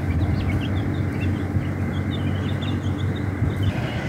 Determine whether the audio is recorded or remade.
recorded